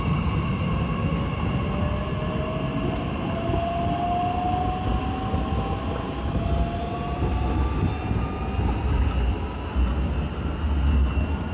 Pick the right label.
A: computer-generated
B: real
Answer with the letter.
B